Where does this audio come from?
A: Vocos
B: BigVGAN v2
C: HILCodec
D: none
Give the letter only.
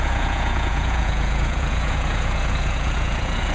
A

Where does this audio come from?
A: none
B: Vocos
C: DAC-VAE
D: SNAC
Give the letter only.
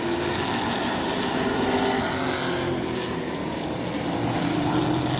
A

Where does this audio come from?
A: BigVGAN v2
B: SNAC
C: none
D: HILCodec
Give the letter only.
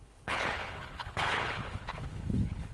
D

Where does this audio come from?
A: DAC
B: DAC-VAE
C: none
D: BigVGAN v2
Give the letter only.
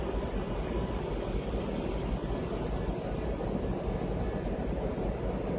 C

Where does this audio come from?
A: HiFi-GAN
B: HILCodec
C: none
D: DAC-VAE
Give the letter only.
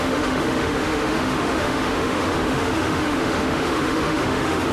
D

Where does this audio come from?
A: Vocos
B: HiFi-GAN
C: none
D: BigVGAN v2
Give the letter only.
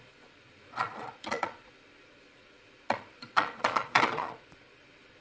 A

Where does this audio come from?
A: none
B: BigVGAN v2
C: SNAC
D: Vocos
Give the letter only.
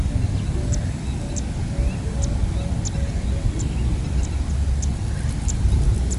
A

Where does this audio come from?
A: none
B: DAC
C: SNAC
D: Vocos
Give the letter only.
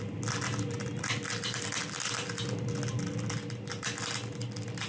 A